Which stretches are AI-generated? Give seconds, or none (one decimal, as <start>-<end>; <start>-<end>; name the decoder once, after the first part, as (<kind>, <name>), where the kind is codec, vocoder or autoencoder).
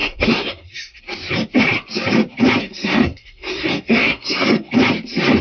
0.0-1.0 (codec, SNAC); 2.6-4.7